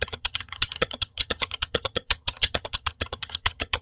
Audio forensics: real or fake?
fake